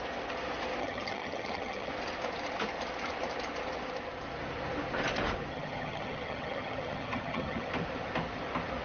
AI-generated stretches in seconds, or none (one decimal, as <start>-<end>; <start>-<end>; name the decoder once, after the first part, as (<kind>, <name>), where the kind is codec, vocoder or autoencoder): 0.8-1.9 (vocoder, HiFi-GAN); 5.5-7.7